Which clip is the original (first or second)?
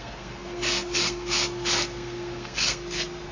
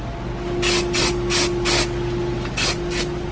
second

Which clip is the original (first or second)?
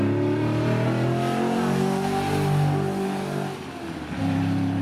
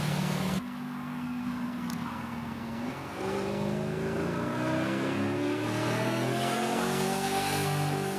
first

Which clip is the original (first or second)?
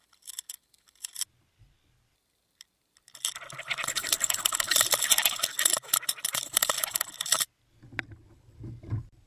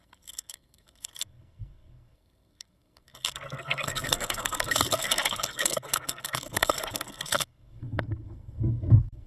first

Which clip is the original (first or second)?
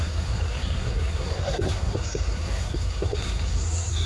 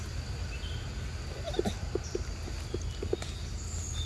second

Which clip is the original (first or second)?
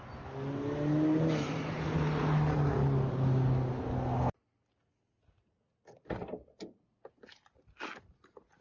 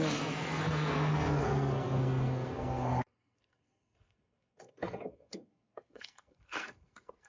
first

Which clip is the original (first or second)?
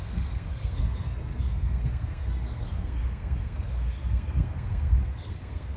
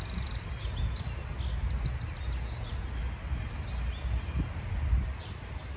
second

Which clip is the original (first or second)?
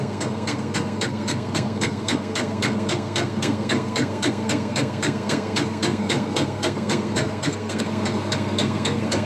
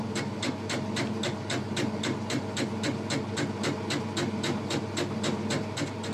second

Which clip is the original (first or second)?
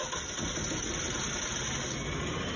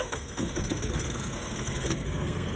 first